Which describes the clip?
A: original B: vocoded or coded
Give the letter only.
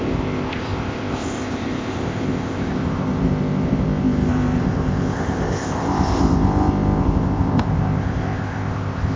B